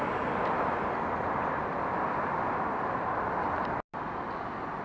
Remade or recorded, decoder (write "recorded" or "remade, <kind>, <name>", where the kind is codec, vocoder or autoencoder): recorded